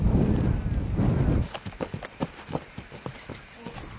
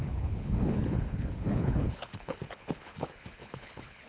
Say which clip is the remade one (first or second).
second